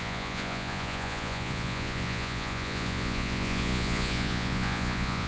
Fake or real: fake